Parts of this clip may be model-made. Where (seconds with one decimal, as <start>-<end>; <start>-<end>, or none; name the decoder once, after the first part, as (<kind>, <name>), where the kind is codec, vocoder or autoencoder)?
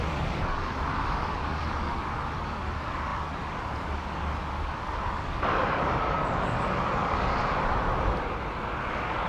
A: 0.0-7.4 (codec, DAC); 8.8-9.3